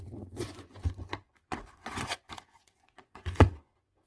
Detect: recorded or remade remade